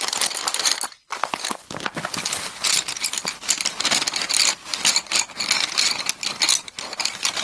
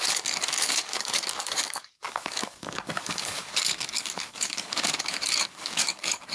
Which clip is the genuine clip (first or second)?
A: first